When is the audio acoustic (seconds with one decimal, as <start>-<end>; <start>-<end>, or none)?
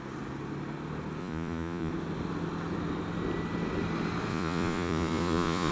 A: 0.0-1.2; 1.9-4.3